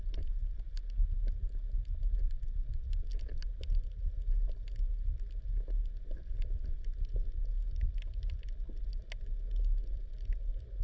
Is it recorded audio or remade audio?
recorded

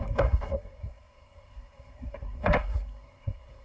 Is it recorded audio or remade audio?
remade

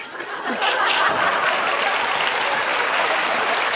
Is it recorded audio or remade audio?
recorded